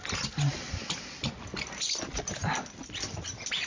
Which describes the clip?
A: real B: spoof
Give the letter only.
A